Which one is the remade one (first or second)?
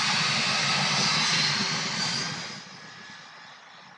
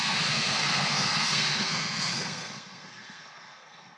second